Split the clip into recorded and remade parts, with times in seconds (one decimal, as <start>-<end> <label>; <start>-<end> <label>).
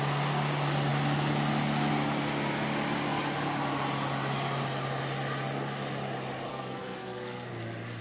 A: 0.0-6.5 recorded; 6.5-7.5 remade; 7.5-8.0 recorded